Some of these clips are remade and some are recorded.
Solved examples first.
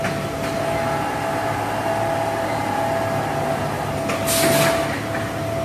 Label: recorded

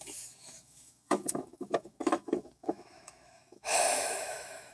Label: remade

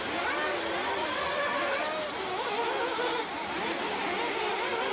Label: recorded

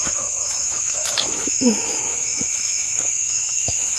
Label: remade